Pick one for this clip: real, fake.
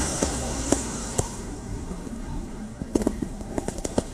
fake